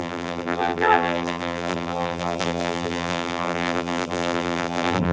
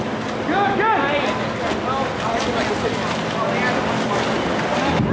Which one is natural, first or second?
second